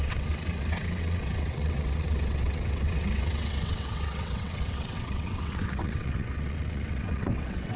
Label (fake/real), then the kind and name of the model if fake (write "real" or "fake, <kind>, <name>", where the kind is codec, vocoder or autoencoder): fake, vocoder, WaveNeXt